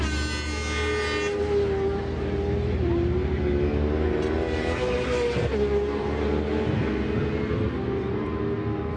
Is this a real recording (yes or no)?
yes